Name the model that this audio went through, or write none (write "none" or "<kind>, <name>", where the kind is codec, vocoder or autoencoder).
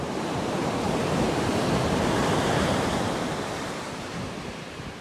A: vocoder, BigVGAN v2